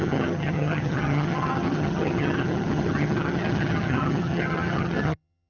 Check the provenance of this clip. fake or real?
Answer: fake